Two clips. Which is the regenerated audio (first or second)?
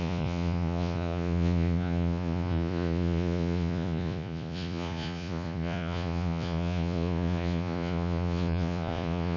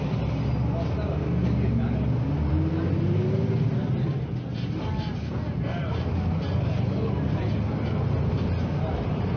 first